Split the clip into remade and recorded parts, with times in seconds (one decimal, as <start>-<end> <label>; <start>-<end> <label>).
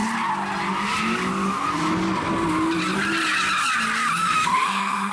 0.0-4.2 recorded; 4.2-5.1 remade